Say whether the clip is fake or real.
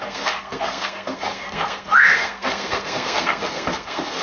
fake